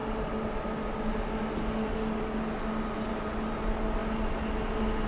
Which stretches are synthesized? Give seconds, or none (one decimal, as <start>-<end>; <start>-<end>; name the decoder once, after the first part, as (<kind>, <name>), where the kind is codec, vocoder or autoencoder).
none